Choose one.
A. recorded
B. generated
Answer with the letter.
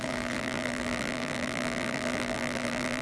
B